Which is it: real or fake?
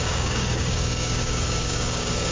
fake